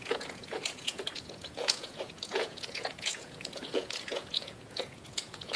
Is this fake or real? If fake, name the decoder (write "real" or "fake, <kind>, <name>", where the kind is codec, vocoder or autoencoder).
fake, vocoder, Vocos